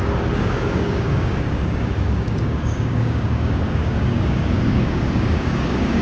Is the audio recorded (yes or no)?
no